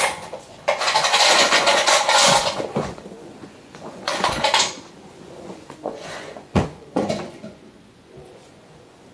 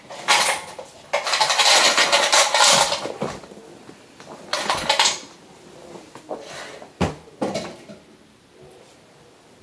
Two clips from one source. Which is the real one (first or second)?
second